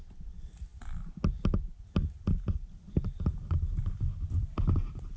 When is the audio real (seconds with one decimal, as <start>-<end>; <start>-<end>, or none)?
0.0-5.2